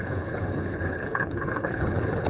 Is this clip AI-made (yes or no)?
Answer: yes